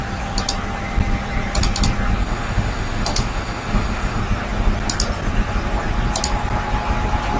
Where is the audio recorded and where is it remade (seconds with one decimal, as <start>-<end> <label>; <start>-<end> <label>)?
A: 0.0-2.2 recorded; 2.2-4.2 remade; 4.2-7.4 recorded